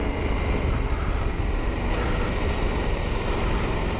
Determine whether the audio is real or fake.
real